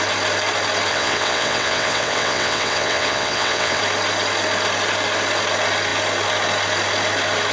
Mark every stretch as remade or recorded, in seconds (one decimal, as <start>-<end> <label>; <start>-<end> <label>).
0.0-0.9 recorded; 0.9-3.8 remade; 3.8-7.5 recorded